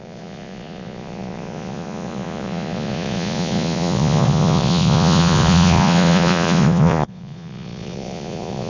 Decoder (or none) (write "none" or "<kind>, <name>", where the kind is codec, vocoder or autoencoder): vocoder, Vocos